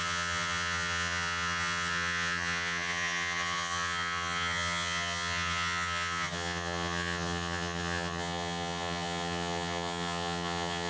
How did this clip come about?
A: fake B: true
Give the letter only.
A